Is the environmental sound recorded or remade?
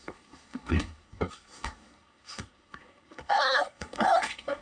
remade